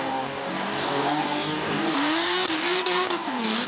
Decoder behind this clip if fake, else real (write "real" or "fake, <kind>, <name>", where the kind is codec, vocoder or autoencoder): fake, codec, DAC